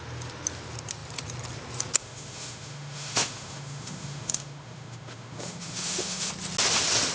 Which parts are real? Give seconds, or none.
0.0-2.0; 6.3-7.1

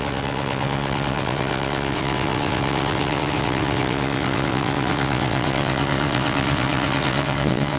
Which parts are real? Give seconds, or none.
none

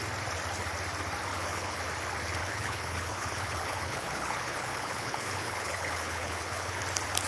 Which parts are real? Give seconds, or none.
0.0-1.3; 1.8-2.4; 6.8-7.3

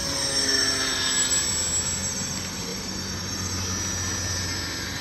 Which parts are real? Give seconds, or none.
0.0-2.7; 3.3-5.0

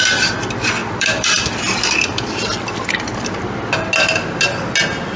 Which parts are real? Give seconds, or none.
0.0-0.8; 3.9-5.2

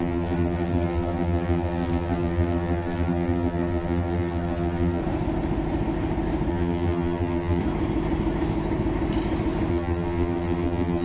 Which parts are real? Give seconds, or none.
5.0-6.5; 7.6-9.7

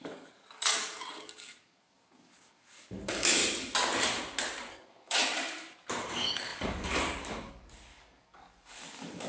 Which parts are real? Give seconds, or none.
3.4-4.7; 5.2-6.0

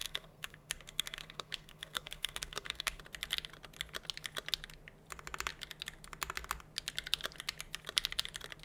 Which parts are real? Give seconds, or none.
3.0-8.6